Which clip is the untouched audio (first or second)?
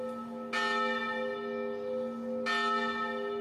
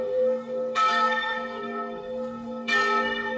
first